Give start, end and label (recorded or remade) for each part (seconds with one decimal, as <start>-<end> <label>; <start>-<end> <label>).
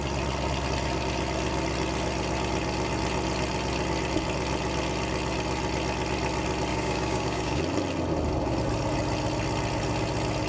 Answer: 0.0-6.7 recorded; 6.7-7.6 remade; 7.6-10.5 recorded